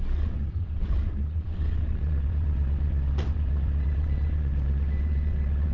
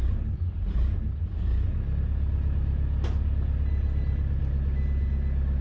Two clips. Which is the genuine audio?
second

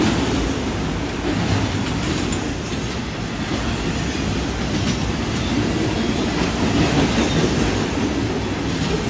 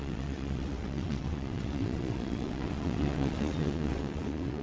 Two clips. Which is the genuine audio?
first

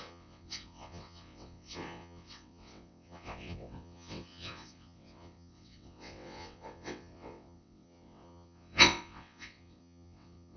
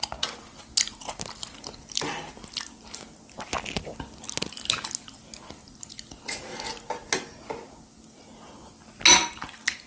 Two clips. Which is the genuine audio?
second